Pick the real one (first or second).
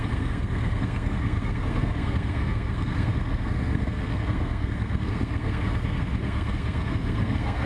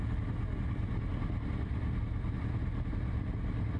second